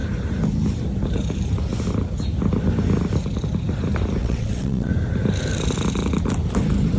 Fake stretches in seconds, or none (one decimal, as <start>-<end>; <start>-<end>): 4.2-4.9